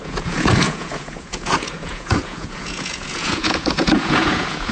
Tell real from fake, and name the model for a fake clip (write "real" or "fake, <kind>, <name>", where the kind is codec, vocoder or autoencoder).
fake, vocoder, Vocos